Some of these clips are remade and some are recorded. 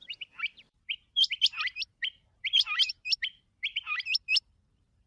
remade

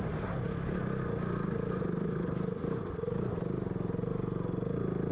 recorded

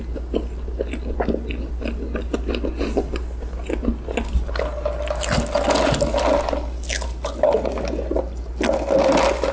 recorded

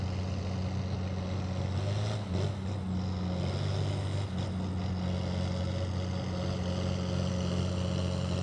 recorded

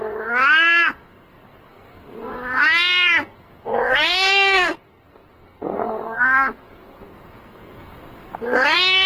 remade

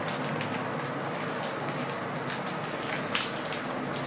recorded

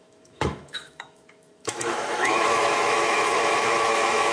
remade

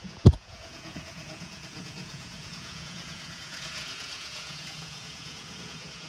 remade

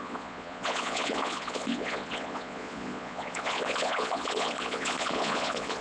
remade